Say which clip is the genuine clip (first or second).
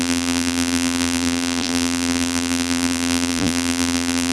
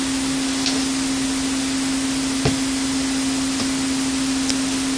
second